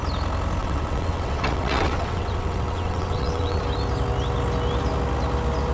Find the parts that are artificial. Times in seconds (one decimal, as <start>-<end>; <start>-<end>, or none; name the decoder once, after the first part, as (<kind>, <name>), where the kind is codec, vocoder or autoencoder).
0.6-3.6 (vocoder, WaveNeXt)

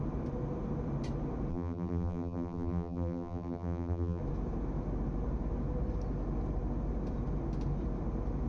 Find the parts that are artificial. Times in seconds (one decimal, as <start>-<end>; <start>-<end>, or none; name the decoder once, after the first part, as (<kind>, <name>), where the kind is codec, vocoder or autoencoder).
1.5-4.2 (vocoder, BigVGAN v2)

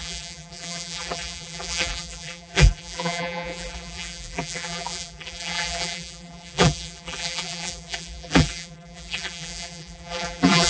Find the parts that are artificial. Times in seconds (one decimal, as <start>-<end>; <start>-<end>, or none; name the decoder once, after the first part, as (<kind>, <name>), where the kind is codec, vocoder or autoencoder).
0.0-10.7 (vocoder, BigVGAN v2)

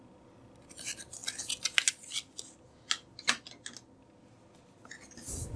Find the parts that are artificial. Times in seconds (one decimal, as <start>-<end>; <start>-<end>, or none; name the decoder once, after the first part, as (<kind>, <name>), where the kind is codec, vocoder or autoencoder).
none